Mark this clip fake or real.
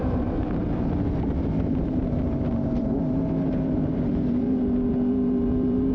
fake